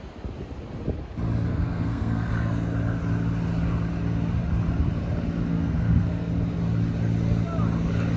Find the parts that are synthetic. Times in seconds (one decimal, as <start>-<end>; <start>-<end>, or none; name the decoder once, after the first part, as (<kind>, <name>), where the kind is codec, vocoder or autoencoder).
1.5-2.3 (codec, SNAC); 5.5-6.3